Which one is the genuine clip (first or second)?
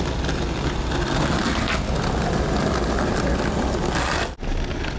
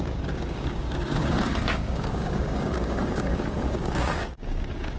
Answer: first